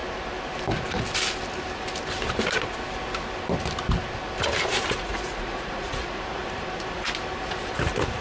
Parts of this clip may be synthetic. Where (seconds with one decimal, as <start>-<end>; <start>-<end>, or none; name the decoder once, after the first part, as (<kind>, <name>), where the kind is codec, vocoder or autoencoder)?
4.9-6.4 (vocoder, Vocos)